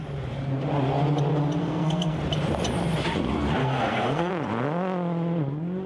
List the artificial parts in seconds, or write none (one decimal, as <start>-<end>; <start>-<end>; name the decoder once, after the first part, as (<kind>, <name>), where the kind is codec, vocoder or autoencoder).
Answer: 1.6-2.2 (codec, SNAC); 3.6-4.3